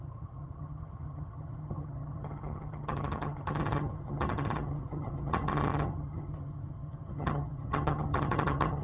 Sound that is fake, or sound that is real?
fake